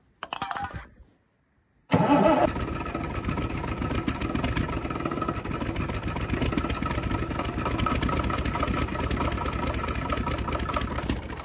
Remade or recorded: recorded